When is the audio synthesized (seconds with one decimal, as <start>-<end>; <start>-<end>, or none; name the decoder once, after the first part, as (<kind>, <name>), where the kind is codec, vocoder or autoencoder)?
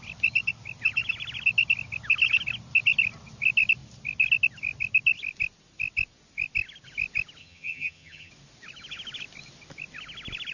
7.4-8.3 (vocoder, HiFi-GAN)